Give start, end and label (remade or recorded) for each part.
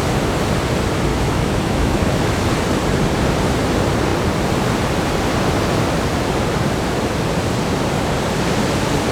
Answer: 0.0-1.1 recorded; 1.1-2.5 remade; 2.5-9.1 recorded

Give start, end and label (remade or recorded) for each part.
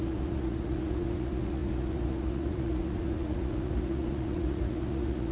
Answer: 0.0-5.3 remade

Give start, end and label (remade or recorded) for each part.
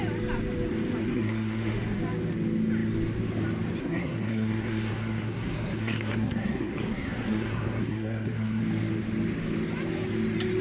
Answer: 0.0-1.0 recorded; 1.0-2.0 remade; 2.0-3.8 recorded; 3.8-8.6 remade; 8.6-10.6 recorded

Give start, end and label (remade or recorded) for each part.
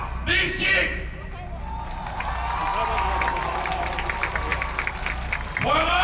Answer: 0.0-6.0 recorded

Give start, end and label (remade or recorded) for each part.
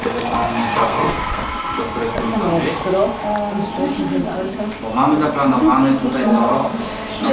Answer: 0.0-1.8 remade; 1.8-6.2 recorded; 6.2-6.8 remade; 6.8-7.3 recorded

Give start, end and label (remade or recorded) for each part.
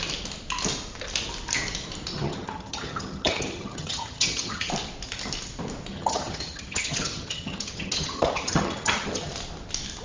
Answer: 0.0-2.1 recorded; 2.1-4.7 remade; 4.7-5.9 recorded; 5.9-9.3 remade; 9.3-10.0 recorded